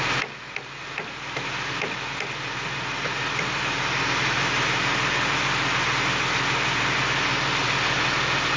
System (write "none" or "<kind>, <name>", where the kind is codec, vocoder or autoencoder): none